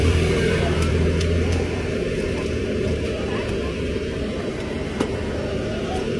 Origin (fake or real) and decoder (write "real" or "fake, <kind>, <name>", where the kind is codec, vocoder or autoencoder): fake, vocoder, BigVGAN v2